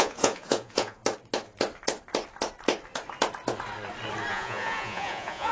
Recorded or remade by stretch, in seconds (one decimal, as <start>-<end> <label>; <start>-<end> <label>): 0.0-1.0 remade; 1.0-4.3 recorded; 4.3-5.5 remade